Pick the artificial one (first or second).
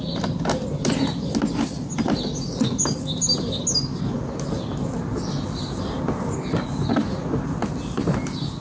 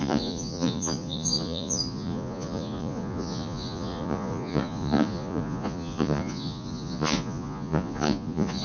second